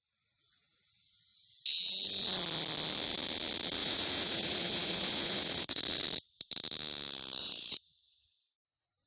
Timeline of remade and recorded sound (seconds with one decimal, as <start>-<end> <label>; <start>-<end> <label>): 0.0-3.8 recorded; 3.8-5.8 remade; 5.8-7.4 recorded; 7.4-8.4 remade; 8.4-9.1 recorded

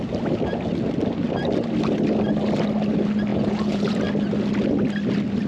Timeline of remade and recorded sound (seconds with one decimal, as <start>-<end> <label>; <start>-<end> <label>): 0.0-3.3 recorded; 3.3-4.0 remade; 4.0-5.5 recorded

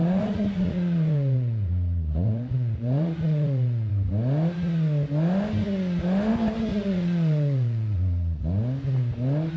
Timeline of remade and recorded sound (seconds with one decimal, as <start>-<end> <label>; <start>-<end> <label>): 0.0-3.9 remade; 3.9-6.7 recorded; 6.7-8.4 remade; 8.4-9.6 recorded

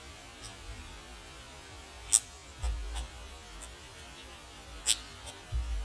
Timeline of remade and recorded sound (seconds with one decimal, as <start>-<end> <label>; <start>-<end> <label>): 0.0-5.8 recorded

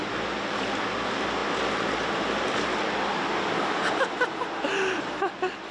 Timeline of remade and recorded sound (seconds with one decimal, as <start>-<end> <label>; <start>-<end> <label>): 0.0-5.7 recorded

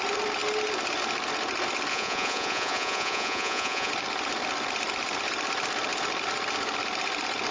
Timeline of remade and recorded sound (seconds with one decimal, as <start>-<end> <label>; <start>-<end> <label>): 0.0-1.9 recorded; 1.9-3.9 remade; 3.9-7.5 recorded